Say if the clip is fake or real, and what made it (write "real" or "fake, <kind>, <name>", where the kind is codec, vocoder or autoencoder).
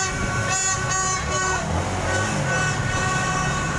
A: real